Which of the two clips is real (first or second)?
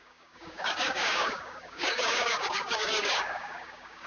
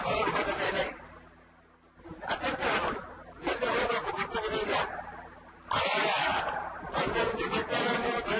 second